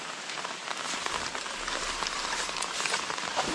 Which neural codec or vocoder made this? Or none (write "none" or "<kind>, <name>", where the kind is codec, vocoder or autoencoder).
vocoder, BigVGAN v2